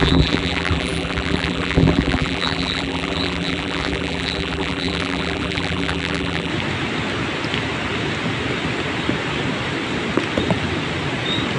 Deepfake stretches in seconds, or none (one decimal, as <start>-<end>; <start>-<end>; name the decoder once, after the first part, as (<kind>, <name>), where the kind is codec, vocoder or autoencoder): 0.0-6.5 (vocoder, BigVGAN v2)